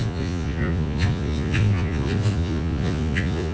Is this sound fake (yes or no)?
yes